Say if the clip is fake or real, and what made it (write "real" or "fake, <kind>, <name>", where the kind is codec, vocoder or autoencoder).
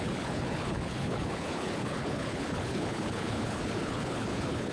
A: fake, codec, HILCodec